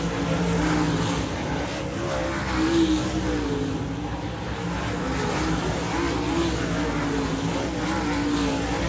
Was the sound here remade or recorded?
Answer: recorded